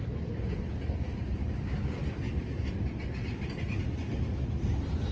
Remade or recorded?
recorded